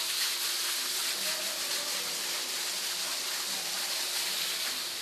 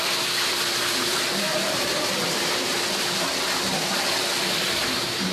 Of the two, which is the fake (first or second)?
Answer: second